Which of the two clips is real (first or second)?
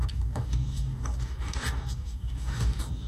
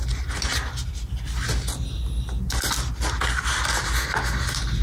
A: second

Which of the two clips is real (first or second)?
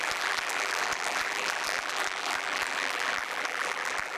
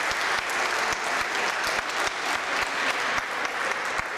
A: second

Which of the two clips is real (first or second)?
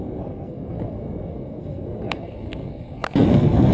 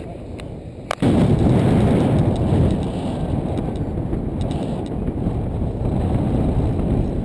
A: second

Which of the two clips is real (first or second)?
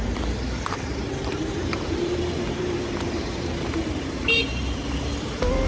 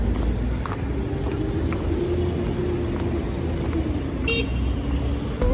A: second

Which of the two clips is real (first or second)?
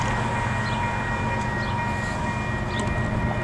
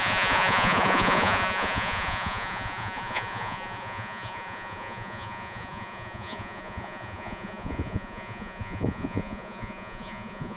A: first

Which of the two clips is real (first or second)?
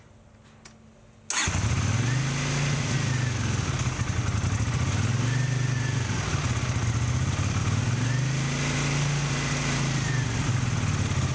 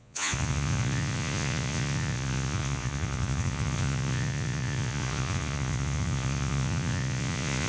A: first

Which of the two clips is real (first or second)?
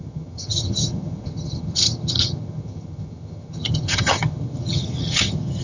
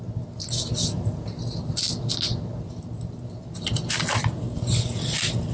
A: second